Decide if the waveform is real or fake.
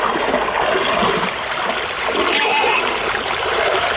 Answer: real